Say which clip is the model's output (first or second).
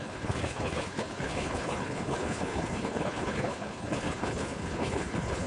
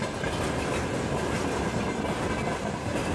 first